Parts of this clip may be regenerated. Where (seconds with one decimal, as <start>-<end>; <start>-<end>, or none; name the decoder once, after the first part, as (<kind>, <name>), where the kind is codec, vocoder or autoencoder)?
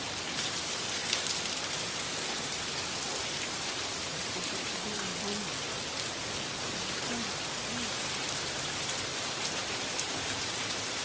0.0-1.0 (vocoder, BigVGAN v2); 3.2-5.1; 6.6-11.0